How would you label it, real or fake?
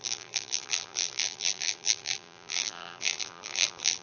fake